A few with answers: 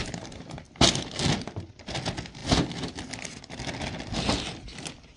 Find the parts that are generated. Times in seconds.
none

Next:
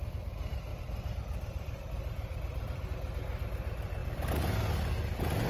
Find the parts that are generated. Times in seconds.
0.7-2.8 (vocoder, BigVGAN v2)

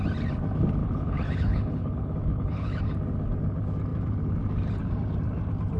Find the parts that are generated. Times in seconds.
0.8-2.8 (codec, HILCodec)

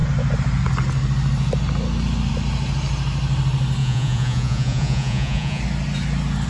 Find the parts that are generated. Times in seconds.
3.8-5.6 (vocoder, Vocos)

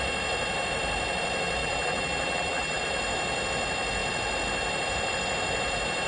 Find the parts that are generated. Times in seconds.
1.6-2.8 (vocoder, BigVGAN v2)